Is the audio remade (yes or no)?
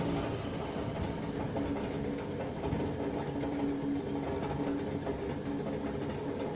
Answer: no